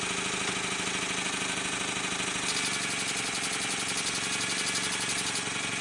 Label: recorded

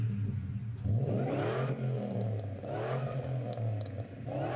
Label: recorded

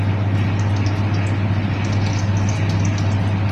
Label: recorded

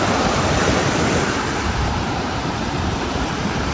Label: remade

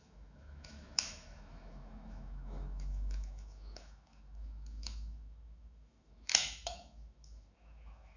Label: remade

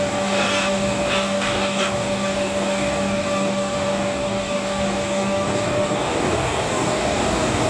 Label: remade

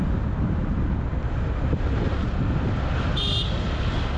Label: recorded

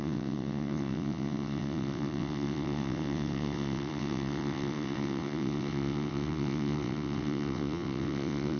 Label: remade